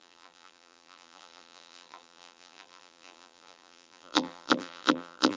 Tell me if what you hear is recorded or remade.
remade